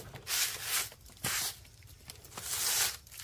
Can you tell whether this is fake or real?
real